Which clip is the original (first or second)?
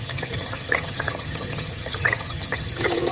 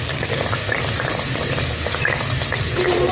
second